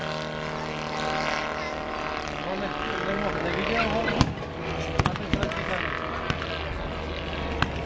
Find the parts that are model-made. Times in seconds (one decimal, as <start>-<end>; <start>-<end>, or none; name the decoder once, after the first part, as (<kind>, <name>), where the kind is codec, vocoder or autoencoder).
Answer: none

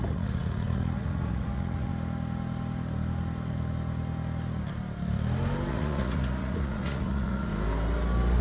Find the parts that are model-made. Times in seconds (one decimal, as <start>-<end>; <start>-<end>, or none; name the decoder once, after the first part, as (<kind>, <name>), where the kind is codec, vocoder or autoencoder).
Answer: 0.0-1.9 (vocoder, Vocos); 5.7-7.5

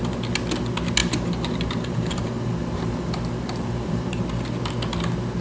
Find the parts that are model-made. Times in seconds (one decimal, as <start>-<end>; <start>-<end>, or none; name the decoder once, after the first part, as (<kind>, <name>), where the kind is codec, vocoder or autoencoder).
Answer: 1.0-4.2 (vocoder, BigVGAN v2)

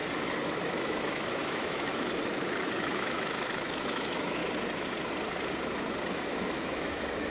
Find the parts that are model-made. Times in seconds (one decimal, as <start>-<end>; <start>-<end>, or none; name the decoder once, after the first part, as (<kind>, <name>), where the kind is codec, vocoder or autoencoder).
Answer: 0.7-4.4 (autoencoder, DAC-VAE); 6.1-7.3

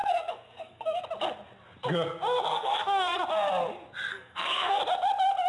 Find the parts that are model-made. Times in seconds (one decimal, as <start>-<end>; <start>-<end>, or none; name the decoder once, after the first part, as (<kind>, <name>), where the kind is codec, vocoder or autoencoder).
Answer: 0.0-1.0 (codec, SNAC); 2.5-3.2; 4.1-4.8